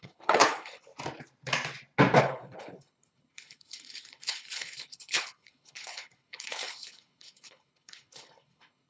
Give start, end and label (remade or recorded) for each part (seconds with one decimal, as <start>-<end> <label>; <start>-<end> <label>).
0.0-0.9 remade; 0.9-2.2 recorded; 2.2-8.9 remade